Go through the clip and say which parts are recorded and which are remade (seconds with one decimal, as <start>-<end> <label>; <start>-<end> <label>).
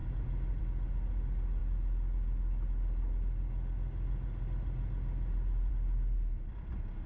0.0-7.1 recorded